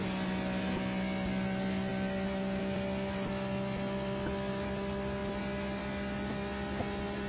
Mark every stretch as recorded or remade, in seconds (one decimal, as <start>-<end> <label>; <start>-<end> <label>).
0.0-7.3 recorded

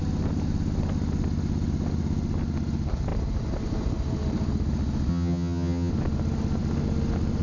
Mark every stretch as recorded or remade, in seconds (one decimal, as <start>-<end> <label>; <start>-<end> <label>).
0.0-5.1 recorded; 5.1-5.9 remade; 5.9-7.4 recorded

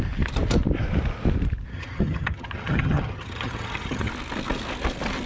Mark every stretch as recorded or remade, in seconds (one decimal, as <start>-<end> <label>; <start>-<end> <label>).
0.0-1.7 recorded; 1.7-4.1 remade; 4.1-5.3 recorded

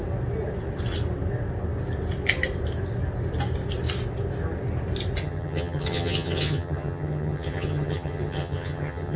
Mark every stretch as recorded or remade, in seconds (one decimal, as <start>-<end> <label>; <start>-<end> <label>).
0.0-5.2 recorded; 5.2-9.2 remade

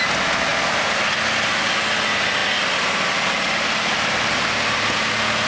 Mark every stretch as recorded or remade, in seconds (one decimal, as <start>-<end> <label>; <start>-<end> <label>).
0.0-5.5 recorded